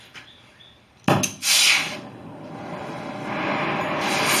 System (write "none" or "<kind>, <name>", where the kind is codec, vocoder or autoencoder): none